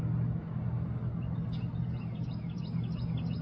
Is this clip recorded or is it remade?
recorded